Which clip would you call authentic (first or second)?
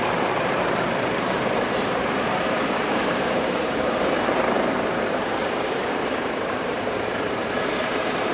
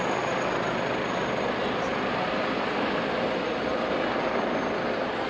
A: second